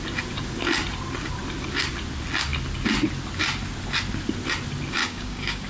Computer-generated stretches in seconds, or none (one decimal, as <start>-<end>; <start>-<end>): 5.0-5.7